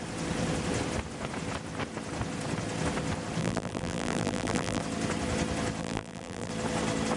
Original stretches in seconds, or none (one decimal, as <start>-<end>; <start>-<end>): 0.0-3.4; 4.8-5.8; 6.5-7.2